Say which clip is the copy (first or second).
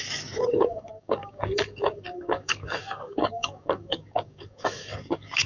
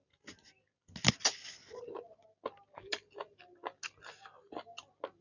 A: first